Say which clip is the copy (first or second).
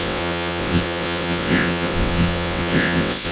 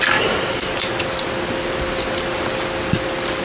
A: first